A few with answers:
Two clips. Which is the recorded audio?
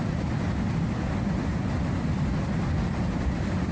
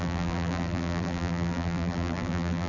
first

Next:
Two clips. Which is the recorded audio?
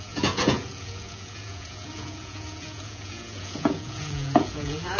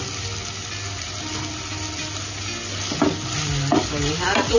second